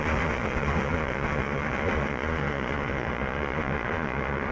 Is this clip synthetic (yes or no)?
yes